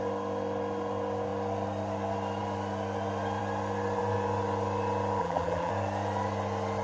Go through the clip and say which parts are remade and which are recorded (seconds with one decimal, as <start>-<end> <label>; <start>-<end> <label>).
0.0-5.2 recorded; 5.2-5.7 remade; 5.7-6.8 recorded